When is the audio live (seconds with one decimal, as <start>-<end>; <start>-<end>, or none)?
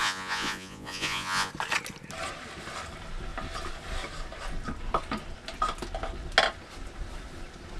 1.5-7.8